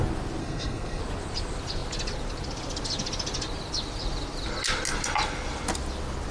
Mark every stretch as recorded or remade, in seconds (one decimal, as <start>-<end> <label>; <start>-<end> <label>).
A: 0.0-0.4 recorded; 0.4-1.0 remade; 1.0-6.3 recorded